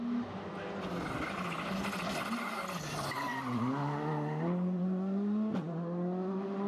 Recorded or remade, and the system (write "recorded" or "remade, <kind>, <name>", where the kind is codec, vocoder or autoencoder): recorded